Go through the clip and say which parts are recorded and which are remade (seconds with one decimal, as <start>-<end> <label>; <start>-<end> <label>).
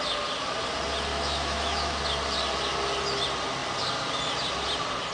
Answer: 0.0-1.1 recorded; 1.1-2.0 remade; 2.0-5.1 recorded